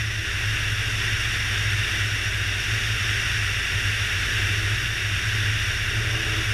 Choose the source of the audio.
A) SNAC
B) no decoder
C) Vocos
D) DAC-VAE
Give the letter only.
B